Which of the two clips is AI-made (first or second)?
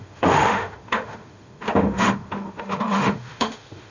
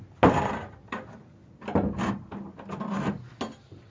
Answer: first